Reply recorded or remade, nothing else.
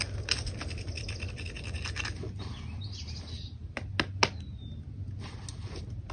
recorded